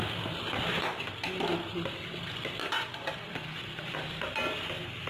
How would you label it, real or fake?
real